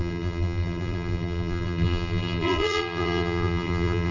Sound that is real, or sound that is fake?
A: fake